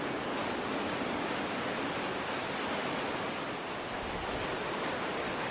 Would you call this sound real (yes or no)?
yes